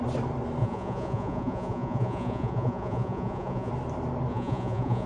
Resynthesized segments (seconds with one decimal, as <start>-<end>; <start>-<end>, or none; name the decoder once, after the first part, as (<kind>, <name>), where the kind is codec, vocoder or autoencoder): 0.6-3.7 (vocoder, Vocos); 4.3-5.1